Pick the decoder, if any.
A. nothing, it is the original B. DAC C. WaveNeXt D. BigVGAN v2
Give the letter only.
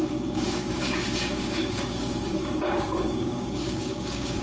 B